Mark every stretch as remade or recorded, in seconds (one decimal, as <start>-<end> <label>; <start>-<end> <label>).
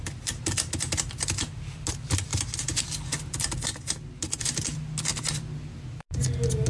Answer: 0.0-6.7 recorded